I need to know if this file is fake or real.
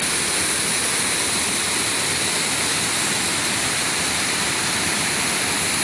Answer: real